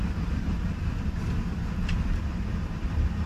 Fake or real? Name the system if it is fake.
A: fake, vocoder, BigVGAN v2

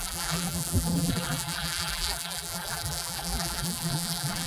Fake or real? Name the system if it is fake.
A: fake, vocoder, BigVGAN v2